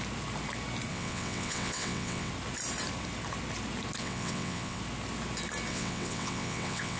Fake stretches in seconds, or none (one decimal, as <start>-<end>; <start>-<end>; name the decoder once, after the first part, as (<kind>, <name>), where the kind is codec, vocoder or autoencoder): 0.9-2.3 (vocoder, WaveNeXt); 4.0-4.8; 5.7-7.0